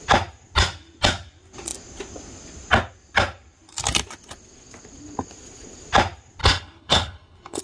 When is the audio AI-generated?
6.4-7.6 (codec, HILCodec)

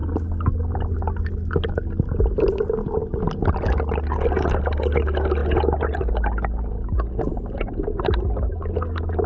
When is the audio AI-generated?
none